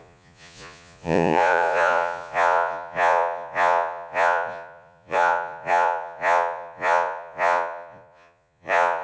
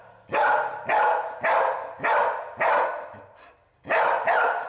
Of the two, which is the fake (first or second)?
first